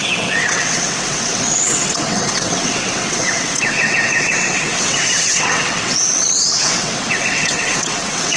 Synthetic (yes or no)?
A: yes